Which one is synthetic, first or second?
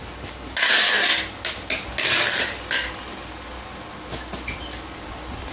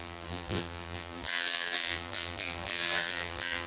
second